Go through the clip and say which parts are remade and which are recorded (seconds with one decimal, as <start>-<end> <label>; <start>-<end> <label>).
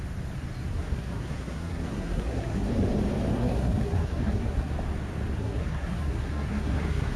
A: 0.0-0.7 recorded; 0.7-2.7 remade; 2.7-3.3 recorded; 3.3-4.7 remade; 4.7-5.4 recorded; 5.4-7.2 remade